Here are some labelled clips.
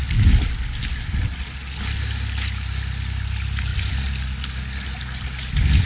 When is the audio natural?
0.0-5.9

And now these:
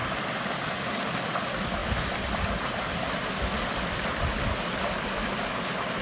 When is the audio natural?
0.0-6.0